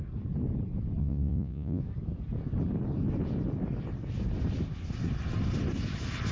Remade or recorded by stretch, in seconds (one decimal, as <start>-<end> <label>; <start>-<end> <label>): 0.0-1.0 recorded; 1.0-1.8 remade; 1.8-6.3 recorded